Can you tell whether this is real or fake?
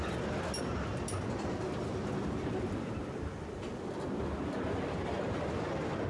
real